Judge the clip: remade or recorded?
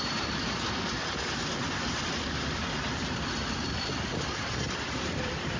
recorded